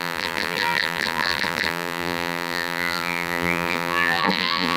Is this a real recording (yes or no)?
no